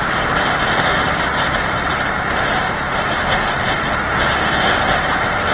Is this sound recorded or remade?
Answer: recorded